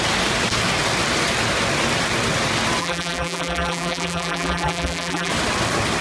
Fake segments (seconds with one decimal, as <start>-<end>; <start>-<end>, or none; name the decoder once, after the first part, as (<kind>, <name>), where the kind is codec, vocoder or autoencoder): 2.8-5.3 (vocoder, BigVGAN v2)